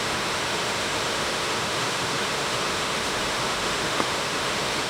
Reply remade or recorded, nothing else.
remade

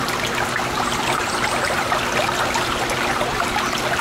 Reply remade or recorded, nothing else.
recorded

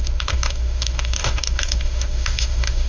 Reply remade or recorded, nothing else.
remade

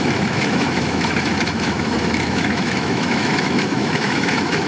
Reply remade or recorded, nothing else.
remade